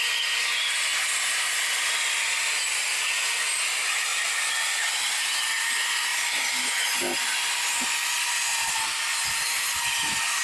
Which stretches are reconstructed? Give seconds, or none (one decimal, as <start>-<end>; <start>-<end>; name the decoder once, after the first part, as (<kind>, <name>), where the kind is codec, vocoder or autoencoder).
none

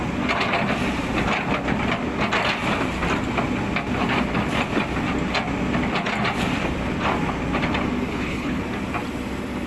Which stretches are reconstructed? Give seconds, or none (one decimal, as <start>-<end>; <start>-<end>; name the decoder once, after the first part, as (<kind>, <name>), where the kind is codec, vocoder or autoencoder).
8.1-8.6 (codec, HILCodec)

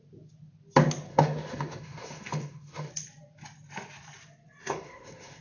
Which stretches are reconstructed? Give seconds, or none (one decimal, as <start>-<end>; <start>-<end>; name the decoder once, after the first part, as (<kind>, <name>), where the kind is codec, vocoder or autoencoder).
1.1-2.9 (autoencoder, DAC-VAE); 4.6-5.4